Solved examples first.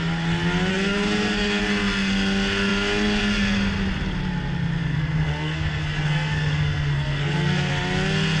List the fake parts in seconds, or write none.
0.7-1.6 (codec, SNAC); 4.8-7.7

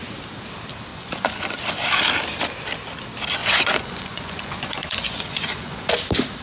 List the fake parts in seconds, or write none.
0.9-1.6 (vocoder, Vocos); 3.4-5.9

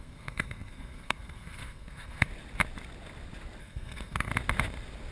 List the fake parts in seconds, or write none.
0.0-2.3 (codec, SNAC); 3.6-4.3

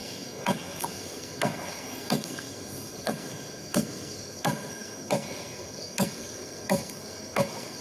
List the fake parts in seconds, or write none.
0.0-7.8 (codec, SNAC)

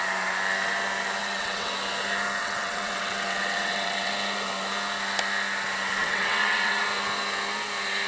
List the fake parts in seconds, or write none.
1.2-1.7 (vocoder, WaveNeXt); 2.4-4.1; 6.0-6.8

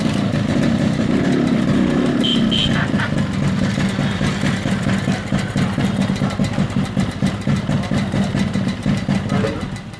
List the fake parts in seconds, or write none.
none

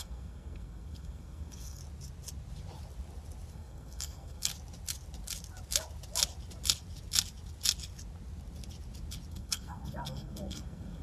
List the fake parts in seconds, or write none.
0.0-1.8 (codec, SNAC); 3.5-4.5; 9.3-11.0

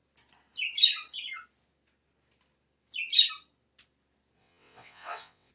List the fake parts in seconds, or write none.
4.4-5.5 (vocoder, WaveNeXt)